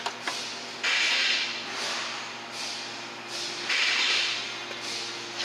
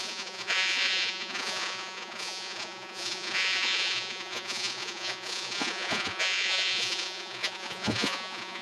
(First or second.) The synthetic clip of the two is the second